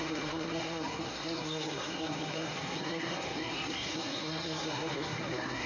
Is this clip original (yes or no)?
no